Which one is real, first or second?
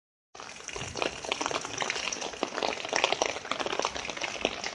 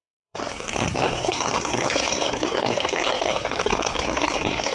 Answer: first